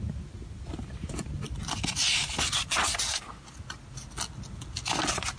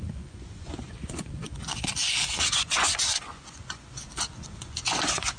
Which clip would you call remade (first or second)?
second